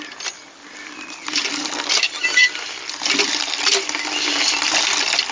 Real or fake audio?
fake